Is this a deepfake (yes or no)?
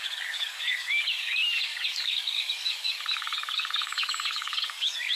yes